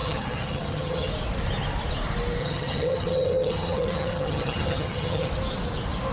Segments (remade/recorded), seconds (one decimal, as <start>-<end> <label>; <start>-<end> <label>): 0.0-1.1 remade; 1.1-2.4 recorded; 2.4-5.3 remade; 5.3-6.1 recorded